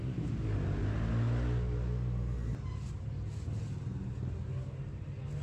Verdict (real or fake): real